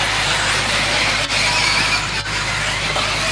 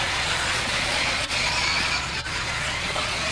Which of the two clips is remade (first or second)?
second